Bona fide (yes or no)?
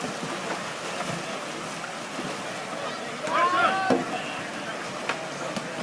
yes